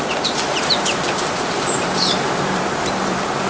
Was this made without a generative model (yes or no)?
no